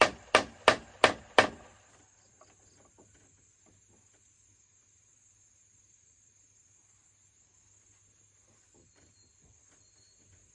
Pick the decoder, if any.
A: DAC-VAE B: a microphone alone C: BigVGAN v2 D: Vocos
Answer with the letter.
C